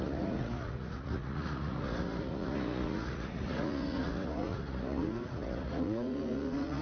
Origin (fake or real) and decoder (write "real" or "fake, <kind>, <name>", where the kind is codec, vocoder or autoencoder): fake, vocoder, Vocos